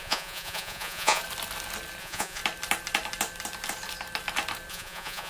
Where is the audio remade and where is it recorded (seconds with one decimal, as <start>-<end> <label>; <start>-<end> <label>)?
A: 0.0-1.2 remade; 1.2-2.0 recorded; 2.0-2.4 remade; 2.4-4.7 recorded; 4.7-5.3 remade